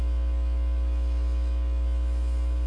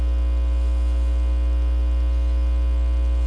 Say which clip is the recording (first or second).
second